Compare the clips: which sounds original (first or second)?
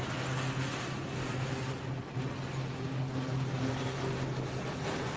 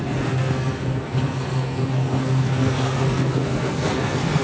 first